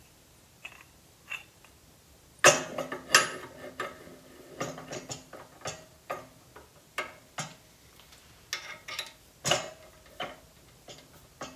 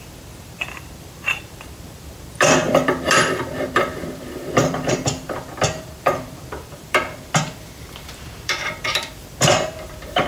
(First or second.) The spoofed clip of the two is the second